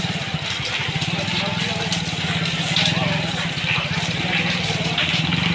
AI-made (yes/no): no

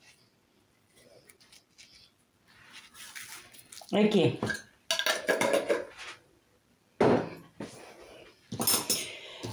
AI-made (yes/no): no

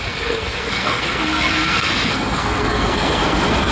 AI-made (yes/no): yes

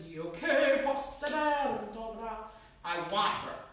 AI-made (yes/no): no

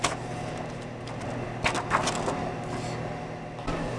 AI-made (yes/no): no